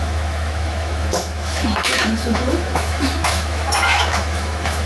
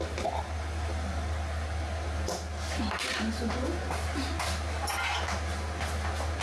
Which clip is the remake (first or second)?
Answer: first